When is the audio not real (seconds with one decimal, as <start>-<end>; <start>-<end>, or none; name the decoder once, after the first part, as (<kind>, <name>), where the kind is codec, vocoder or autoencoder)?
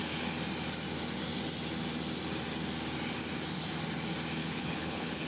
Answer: 4.4-5.3 (codec, HILCodec)